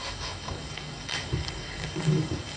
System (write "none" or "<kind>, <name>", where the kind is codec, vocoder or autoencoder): codec, DAC